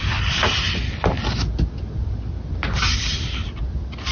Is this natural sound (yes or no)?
yes